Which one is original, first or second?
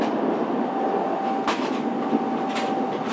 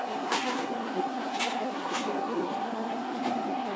first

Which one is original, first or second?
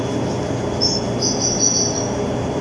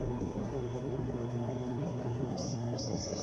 first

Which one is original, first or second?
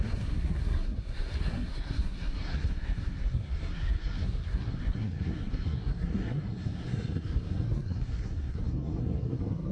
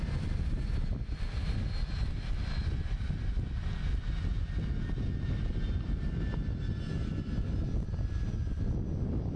second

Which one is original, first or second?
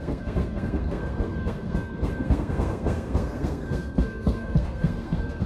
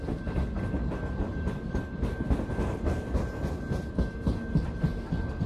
second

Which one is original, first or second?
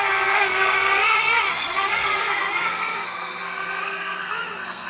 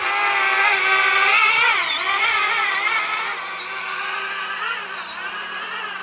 second